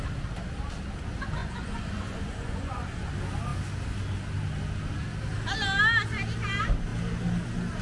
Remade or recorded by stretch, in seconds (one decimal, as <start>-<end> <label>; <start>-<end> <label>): 0.0-1.4 recorded; 1.4-3.1 remade; 3.1-7.8 recorded

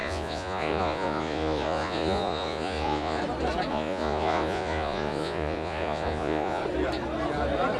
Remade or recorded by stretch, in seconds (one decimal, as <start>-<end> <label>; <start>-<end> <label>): 0.0-3.2 remade; 3.2-3.7 recorded; 3.7-6.6 remade; 6.6-7.8 recorded